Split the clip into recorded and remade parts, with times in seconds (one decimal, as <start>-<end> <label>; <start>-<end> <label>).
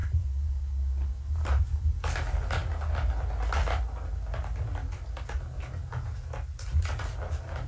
0.0-7.7 recorded